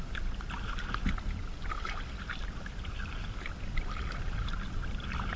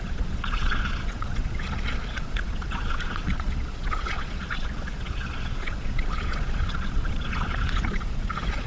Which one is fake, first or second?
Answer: second